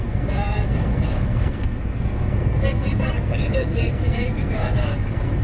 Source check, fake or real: fake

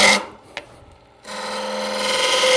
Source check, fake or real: real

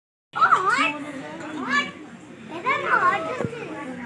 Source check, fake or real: real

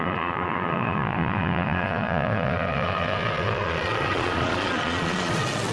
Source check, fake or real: fake